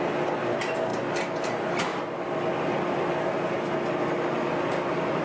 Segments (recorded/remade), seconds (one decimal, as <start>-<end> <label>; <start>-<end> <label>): 0.0-5.2 recorded